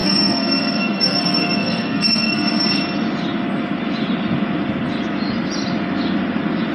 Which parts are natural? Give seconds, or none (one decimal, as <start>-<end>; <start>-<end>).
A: 2.8-6.7